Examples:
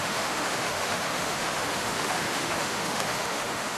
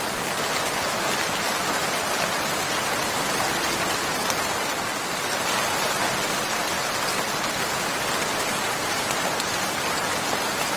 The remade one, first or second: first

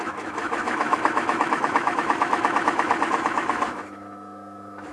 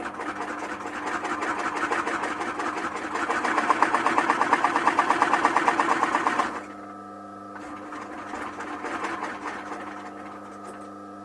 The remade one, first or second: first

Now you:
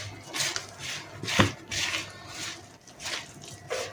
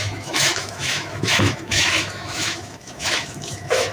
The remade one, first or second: second